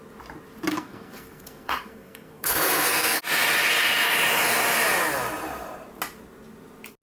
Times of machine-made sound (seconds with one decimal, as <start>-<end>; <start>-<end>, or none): 0.7-3.2